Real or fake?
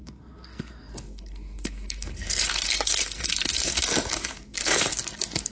fake